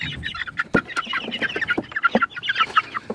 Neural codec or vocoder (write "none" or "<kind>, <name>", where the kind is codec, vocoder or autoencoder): none